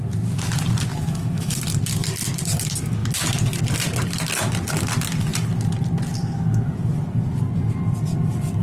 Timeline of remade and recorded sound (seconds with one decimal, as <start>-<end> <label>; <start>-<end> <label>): 0.0-0.9 recorded; 0.9-1.5 remade; 1.5-8.6 recorded